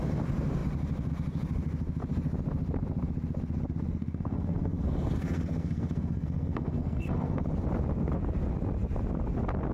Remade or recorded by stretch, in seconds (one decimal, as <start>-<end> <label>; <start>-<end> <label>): 0.0-4.0 recorded; 4.0-7.4 remade; 7.4-9.7 recorded